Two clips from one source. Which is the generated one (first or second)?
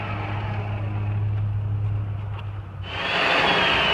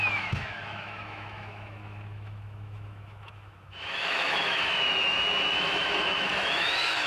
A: second